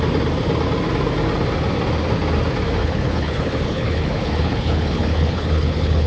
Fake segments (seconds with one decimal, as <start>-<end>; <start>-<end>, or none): 2.8-6.1